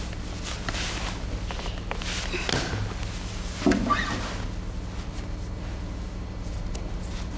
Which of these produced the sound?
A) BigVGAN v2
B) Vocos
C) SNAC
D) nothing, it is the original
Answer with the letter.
D